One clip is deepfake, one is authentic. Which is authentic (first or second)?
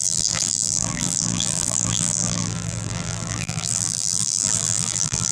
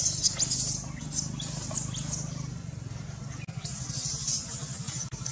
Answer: second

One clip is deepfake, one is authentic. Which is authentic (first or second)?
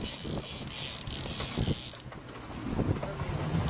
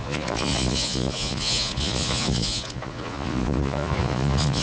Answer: first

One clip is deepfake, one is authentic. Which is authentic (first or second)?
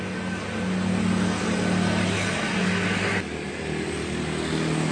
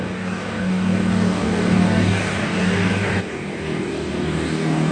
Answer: first